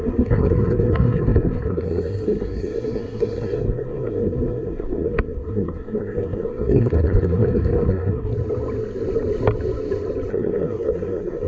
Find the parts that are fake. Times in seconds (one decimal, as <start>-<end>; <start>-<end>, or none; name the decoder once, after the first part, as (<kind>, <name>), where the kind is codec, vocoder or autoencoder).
0.0-8.3 (codec, SNAC); 10.3-11.5